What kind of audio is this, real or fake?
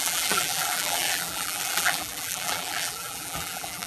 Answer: fake